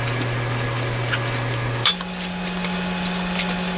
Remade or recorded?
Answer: recorded